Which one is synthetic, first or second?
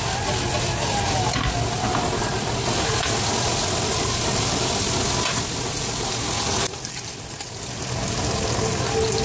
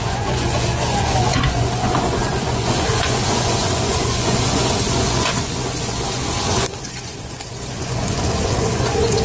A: second